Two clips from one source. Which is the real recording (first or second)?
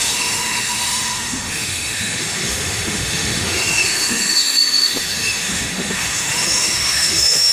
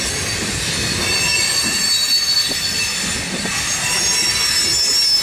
second